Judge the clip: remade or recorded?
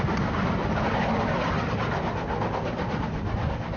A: recorded